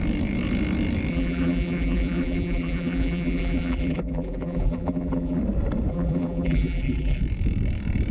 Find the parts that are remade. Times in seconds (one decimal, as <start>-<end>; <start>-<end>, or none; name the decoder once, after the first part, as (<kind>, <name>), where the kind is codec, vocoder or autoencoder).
1.1-5.4 (vocoder, BigVGAN v2); 5.9-7.2